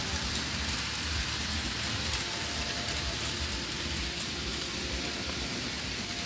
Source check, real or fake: real